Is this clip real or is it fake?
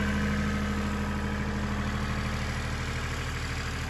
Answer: real